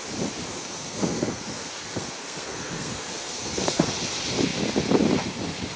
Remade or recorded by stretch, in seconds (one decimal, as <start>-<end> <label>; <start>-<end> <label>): 0.0-0.6 recorded; 0.6-3.9 remade; 3.9-5.8 recorded

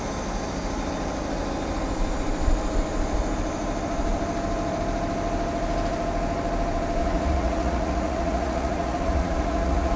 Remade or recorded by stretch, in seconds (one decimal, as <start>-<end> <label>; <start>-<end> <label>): 0.0-7.0 recorded; 7.0-10.0 remade

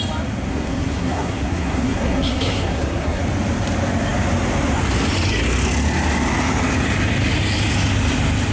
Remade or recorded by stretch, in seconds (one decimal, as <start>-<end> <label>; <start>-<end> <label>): 0.0-0.5 recorded; 0.5-3.2 remade; 3.2-8.5 recorded

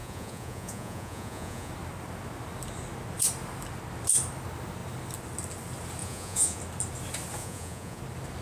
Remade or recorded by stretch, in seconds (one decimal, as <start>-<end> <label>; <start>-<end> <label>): 0.0-1.7 remade; 1.7-6.0 recorded; 6.0-6.6 remade; 6.6-7.4 recorded; 7.4-8.0 remade; 8.0-8.4 recorded

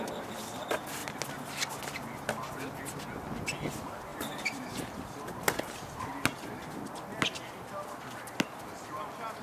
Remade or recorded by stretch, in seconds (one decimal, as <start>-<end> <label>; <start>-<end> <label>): 0.0-4.1 recorded; 4.1-4.8 remade; 4.8-9.4 recorded

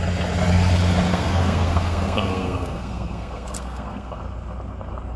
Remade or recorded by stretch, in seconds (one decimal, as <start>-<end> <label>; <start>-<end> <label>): 0.0-1.1 recorded; 1.1-4.2 remade; 4.2-5.2 recorded

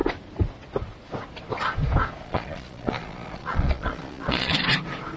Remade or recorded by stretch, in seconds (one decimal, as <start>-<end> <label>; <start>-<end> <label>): 0.0-2.2 recorded; 2.2-4.6 remade; 4.6-5.2 recorded